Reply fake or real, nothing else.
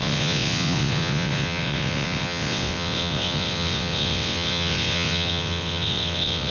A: fake